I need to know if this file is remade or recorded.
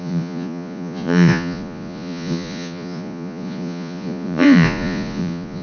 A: remade